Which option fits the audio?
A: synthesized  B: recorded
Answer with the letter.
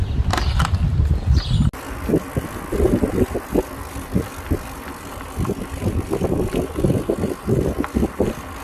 B